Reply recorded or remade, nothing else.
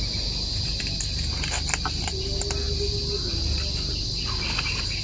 recorded